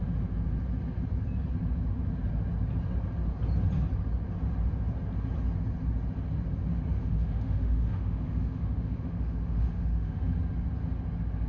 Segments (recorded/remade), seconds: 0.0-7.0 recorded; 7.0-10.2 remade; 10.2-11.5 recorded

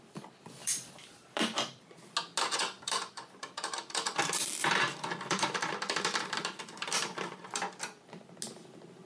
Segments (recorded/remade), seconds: 0.0-0.6 recorded; 0.6-1.8 remade; 1.8-2.6 recorded; 2.6-7.5 remade; 7.5-9.1 recorded

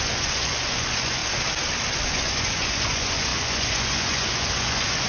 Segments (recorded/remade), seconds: 0.0-1.2 remade; 1.2-1.9 recorded; 1.9-5.1 remade